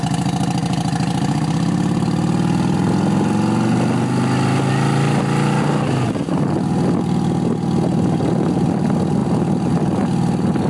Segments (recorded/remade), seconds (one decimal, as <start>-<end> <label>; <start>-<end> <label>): 0.0-10.7 recorded